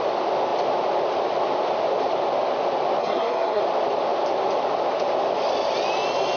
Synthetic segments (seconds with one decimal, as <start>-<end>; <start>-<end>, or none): 3.0-3.6